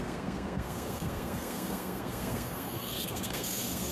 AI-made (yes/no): yes